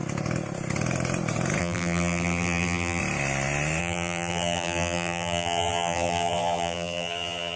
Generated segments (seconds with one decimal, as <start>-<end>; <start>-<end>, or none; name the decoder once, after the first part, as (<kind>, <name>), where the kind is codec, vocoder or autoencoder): 1.6-3.0 (vocoder, BigVGAN v2); 3.8-7.6